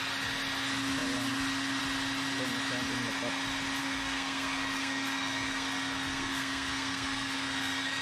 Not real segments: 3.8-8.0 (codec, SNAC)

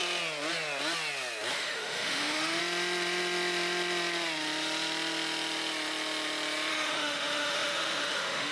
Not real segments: 1.5-2.6 (autoencoder, DAC-VAE); 6.7-8.5